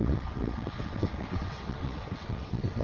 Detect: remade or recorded remade